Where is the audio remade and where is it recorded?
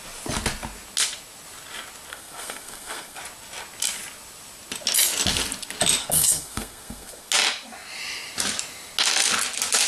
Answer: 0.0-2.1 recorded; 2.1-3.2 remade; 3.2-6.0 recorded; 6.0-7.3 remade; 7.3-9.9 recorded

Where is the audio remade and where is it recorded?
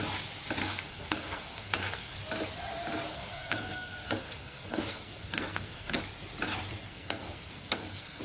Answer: 0.0-0.6 recorded; 0.6-2.2 remade; 2.2-3.1 recorded; 3.1-6.0 remade; 6.0-6.8 recorded; 6.8-8.2 remade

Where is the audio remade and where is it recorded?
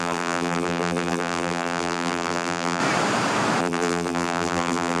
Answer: 0.0-2.8 remade; 2.8-3.6 recorded; 3.6-5.0 remade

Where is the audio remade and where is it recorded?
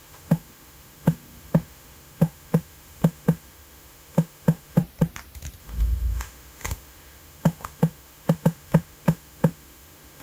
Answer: 0.0-4.8 remade; 4.8-5.6 recorded; 5.6-10.2 remade